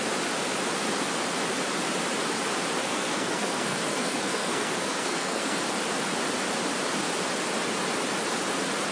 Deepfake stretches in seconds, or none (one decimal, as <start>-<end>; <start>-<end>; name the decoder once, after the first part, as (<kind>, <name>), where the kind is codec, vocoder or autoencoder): 2.8-5.6 (codec, SNAC)